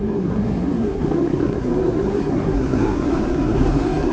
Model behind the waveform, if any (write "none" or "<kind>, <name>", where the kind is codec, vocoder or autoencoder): codec, SNAC